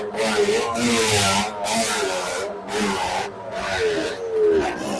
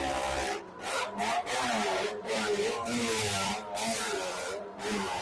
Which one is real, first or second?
first